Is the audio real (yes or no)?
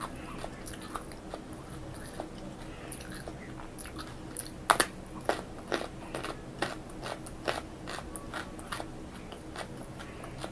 yes